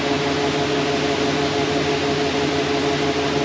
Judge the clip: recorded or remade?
recorded